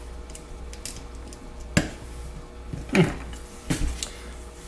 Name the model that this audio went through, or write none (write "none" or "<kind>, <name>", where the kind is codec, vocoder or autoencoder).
none